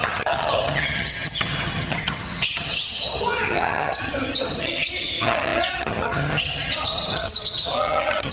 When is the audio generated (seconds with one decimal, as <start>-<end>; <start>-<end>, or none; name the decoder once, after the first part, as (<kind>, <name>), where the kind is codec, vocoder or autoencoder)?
0.0-8.3 (vocoder, HiFi-GAN)